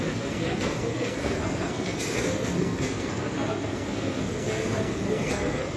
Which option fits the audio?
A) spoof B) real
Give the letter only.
A